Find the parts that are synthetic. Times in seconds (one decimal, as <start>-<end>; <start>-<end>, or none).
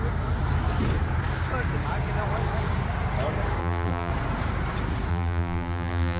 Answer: 3.6-4.1; 5.1-6.2